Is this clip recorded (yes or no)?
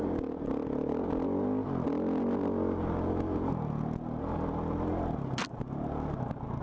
yes